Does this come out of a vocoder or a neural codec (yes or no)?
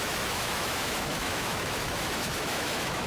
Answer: yes